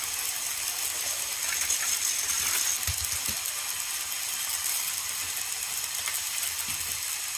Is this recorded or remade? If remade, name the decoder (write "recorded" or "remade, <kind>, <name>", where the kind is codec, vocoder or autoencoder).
recorded